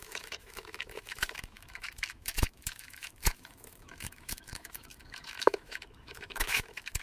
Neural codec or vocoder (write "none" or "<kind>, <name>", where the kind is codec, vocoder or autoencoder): autoencoder, DAC-VAE